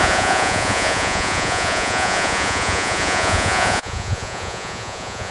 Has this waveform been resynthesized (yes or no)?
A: yes